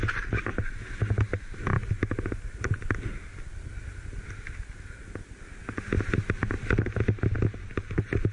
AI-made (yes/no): no